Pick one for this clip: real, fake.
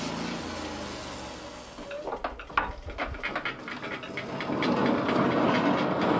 real